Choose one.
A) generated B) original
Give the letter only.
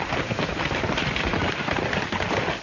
B